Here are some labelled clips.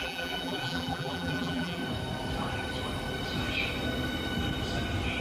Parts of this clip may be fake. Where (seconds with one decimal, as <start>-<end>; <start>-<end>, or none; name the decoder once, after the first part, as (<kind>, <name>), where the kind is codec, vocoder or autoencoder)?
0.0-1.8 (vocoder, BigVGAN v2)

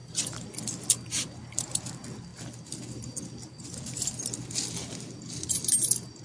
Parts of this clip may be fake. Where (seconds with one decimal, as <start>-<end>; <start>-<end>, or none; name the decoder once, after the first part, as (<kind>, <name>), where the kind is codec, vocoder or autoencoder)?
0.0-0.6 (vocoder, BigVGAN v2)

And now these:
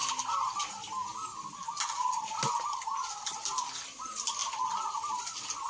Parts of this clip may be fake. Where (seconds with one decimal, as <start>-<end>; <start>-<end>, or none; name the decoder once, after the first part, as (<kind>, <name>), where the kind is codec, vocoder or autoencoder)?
4.4-5.2 (vocoder, BigVGAN v2)

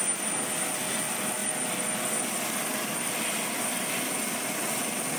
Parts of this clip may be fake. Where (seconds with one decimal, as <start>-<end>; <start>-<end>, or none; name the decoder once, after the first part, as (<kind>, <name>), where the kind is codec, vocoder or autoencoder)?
none

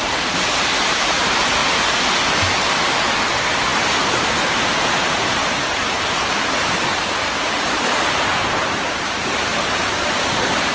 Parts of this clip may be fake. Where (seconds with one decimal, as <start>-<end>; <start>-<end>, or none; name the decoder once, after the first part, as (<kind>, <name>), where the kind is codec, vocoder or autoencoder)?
0.0-1.6 (vocoder, BigVGAN v2); 3.3-5.4; 7.2-10.7

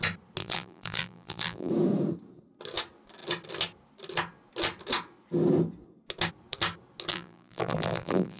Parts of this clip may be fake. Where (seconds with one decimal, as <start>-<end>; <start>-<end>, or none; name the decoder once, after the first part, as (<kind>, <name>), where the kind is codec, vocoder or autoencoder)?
0.4-1.7 (vocoder, BigVGAN v2); 7.1-8.4

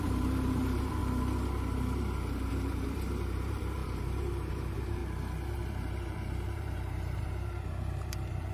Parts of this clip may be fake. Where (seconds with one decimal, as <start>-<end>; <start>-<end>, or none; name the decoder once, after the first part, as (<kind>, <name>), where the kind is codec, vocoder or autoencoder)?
0.0-1.0 (vocoder, BigVGAN v2); 2.5-5.0; 5.7-8.5